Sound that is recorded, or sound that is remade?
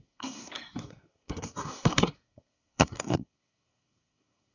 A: remade